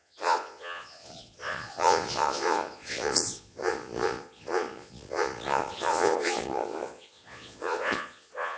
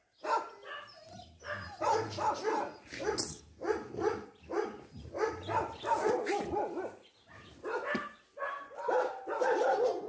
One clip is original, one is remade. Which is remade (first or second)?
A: first